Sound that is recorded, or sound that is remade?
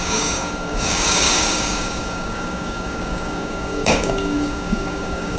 remade